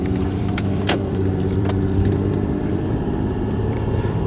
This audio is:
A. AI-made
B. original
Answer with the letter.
A